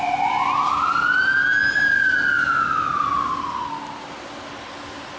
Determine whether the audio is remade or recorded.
recorded